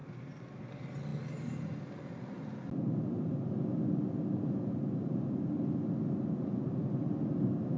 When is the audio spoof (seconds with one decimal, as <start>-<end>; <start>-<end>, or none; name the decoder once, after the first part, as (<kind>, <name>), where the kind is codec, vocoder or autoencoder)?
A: 0.0-0.6 (vocoder, BigVGAN v2)

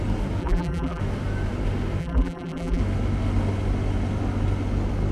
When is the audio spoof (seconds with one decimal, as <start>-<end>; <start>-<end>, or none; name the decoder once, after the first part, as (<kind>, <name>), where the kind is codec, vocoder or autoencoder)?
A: 0.4-1.0 (vocoder, BigVGAN v2); 2.0-2.8

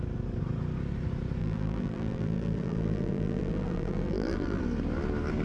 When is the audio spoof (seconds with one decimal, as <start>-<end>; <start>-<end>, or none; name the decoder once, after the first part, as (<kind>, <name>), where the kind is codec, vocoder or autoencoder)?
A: 1.4-4.6 (vocoder, BigVGAN v2)